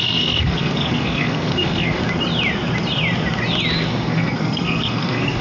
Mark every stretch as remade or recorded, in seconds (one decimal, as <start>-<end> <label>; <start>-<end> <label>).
0.0-2.0 remade; 2.0-3.9 recorded; 3.9-5.4 remade